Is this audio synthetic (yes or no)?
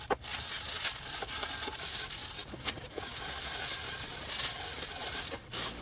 no